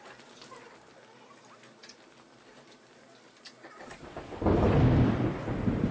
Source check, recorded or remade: recorded